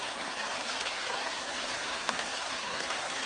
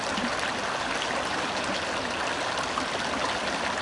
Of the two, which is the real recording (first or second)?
second